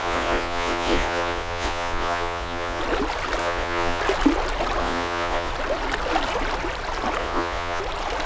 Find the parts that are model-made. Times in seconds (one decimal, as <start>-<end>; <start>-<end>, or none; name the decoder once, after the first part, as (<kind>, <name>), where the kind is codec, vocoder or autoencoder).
0.0-2.8 (vocoder, Vocos); 3.4-4.0; 4.8-5.5; 7.2-7.8